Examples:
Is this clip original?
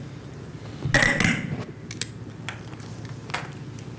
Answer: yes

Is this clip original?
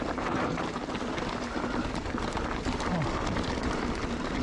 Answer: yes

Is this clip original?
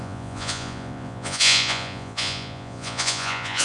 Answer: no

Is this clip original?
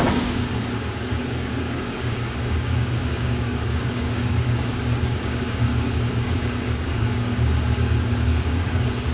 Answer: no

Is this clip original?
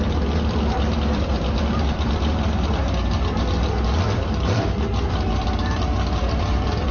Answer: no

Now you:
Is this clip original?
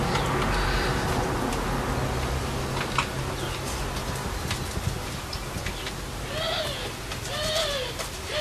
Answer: yes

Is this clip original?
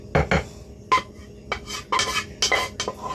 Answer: yes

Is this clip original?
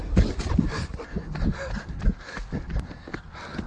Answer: yes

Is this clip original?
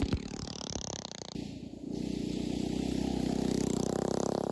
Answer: yes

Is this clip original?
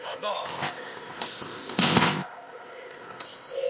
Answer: no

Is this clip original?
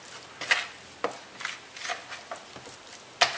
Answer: yes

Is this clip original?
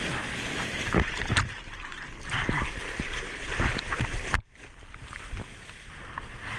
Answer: yes